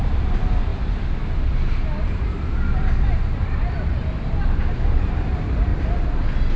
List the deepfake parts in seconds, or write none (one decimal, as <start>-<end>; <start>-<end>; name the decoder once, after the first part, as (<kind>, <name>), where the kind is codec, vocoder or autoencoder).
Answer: 0.0-0.7 (vocoder, BigVGAN v2); 4.7-5.7